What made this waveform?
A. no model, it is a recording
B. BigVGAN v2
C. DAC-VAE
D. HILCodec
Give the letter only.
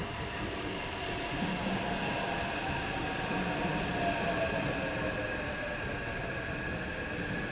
A